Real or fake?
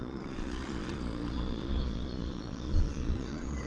fake